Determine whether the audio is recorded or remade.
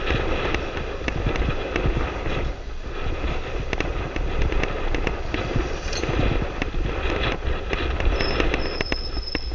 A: recorded